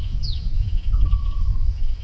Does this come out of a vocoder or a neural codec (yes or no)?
yes